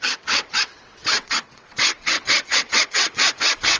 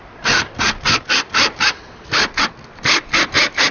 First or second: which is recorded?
second